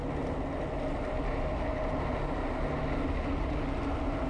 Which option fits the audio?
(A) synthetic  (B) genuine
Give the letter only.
B